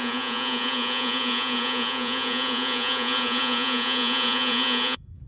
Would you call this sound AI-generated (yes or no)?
yes